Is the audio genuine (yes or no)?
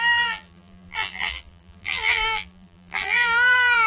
no